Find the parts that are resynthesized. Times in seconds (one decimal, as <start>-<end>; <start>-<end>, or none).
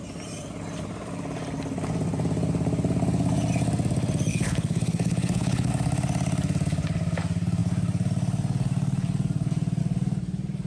4.3-5.7